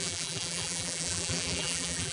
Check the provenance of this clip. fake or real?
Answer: fake